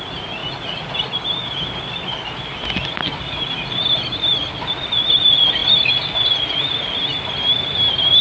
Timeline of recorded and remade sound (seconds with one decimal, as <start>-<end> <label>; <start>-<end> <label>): 0.0-0.4 recorded; 0.4-1.0 remade; 1.0-8.2 recorded